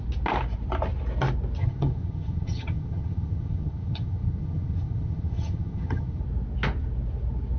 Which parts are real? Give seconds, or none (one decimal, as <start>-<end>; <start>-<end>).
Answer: 0.0-1.6; 6.2-7.6